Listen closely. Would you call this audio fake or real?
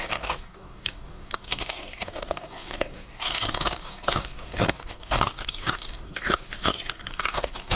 fake